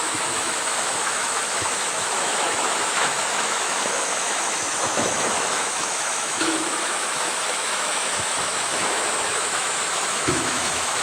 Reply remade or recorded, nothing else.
remade